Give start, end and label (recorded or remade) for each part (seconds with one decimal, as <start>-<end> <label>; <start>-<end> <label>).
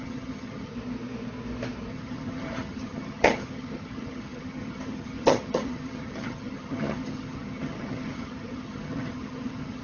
0.0-0.7 remade; 0.7-1.9 recorded; 1.9-9.8 remade